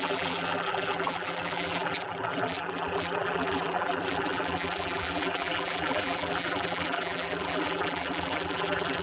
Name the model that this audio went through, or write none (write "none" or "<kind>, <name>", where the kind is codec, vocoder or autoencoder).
vocoder, BigVGAN v2